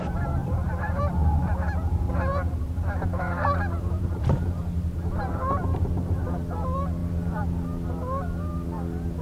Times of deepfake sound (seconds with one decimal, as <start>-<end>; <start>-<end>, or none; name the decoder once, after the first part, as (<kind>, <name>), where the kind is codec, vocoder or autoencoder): 0.4-1.0 (vocoder, BigVGAN v2); 2.3-6.2